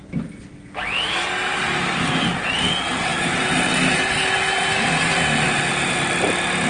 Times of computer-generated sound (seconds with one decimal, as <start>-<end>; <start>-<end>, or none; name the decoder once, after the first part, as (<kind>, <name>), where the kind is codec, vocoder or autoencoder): none